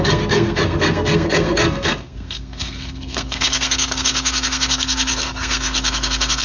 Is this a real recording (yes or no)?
no